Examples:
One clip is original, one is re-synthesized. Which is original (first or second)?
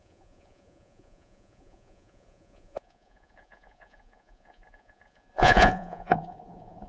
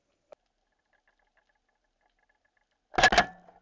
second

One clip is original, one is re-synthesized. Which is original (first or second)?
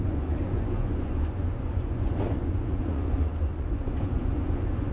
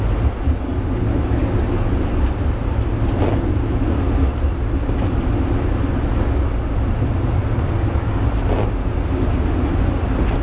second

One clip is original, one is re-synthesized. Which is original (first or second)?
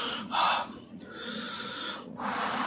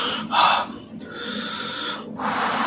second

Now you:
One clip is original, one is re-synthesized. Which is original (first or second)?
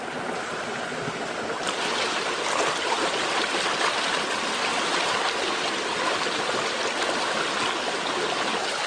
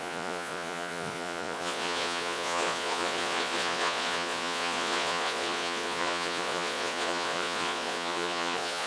first